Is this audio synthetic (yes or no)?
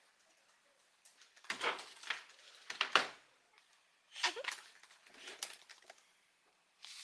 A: no